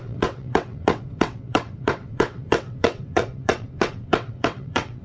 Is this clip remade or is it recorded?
remade